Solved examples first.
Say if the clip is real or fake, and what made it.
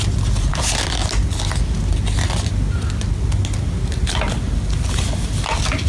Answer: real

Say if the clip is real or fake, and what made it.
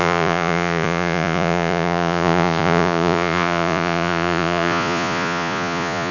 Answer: fake, vocoder, Vocos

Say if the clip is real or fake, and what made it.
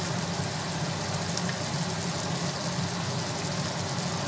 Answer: real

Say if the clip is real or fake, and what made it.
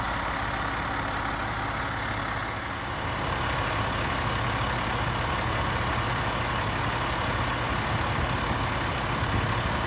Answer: real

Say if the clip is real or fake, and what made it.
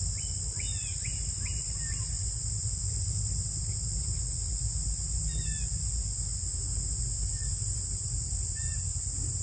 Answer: real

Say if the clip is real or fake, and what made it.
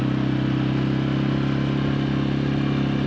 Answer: real